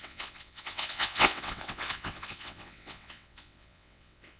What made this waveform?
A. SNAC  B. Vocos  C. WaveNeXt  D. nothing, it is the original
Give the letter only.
C